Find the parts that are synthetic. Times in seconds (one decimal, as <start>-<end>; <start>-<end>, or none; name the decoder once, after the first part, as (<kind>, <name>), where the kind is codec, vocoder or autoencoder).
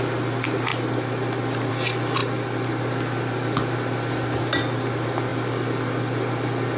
none